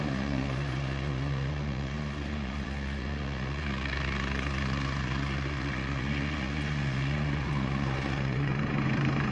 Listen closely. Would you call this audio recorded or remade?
remade